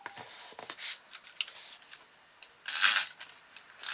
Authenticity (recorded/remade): recorded